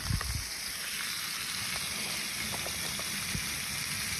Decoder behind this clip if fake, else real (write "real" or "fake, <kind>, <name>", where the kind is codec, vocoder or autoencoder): real